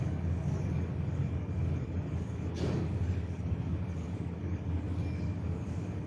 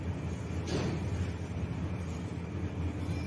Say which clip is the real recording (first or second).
second